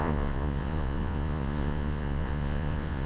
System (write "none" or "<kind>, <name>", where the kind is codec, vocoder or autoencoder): vocoder, Vocos